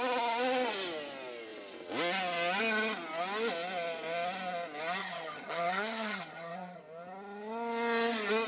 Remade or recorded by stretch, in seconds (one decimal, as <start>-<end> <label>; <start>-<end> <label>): 0.0-5.0 recorded; 5.0-6.8 remade; 6.8-8.5 recorded